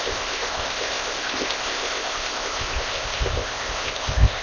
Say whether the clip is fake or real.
fake